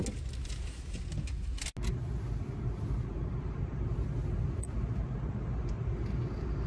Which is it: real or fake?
real